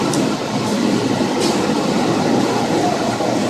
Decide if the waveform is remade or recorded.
recorded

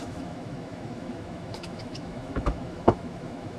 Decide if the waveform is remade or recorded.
remade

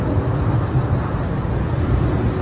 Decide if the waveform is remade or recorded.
recorded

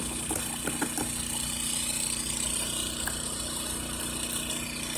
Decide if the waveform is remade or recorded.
recorded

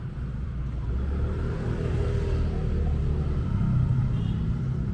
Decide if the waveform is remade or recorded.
recorded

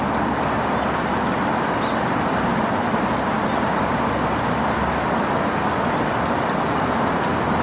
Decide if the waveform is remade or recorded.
recorded